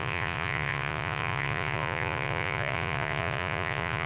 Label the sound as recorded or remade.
remade